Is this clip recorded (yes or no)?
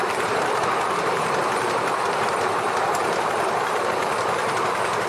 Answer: no